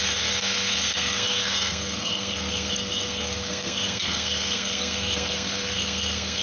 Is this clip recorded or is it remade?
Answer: remade